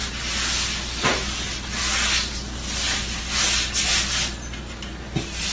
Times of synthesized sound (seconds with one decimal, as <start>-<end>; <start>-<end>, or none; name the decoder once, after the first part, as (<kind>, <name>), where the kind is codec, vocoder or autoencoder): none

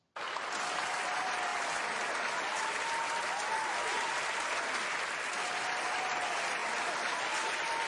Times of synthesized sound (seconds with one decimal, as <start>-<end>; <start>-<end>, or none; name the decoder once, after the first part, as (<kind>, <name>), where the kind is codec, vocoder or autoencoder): none

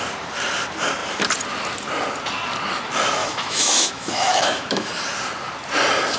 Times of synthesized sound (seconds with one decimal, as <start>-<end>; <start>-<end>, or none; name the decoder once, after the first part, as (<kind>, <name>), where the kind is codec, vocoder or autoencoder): 3.2-4.9 (autoencoder, DAC-VAE)

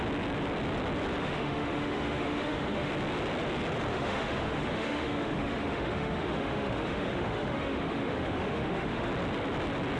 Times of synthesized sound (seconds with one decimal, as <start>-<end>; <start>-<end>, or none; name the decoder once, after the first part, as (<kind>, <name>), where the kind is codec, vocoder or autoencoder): 1.2-2.9 (autoencoder, DAC-VAE); 3.9-9.1